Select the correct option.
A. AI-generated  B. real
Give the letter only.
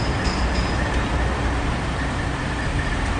B